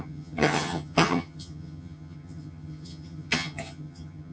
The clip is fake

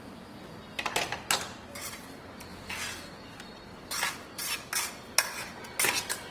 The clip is real